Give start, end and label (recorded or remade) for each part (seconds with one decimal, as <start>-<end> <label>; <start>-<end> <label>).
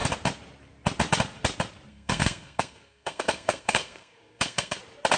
0.0-1.9 recorded; 1.9-4.8 remade; 4.8-5.2 recorded